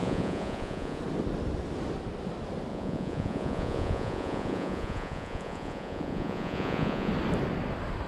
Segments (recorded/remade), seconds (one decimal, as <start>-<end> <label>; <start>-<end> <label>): 0.0-1.0 remade; 1.0-2.7 recorded; 2.7-7.1 remade; 7.1-8.1 recorded